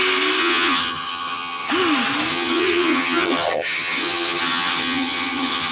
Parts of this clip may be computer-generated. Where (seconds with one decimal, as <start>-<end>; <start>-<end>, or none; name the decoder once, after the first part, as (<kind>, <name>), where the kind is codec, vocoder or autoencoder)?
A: 0.4-1.7 (vocoder, HiFi-GAN); 2.3-5.7